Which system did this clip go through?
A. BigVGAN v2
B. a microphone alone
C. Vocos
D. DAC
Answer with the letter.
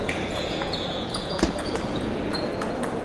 C